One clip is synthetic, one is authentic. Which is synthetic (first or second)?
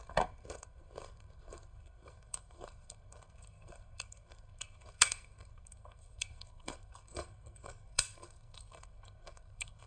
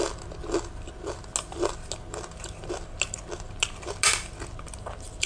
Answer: first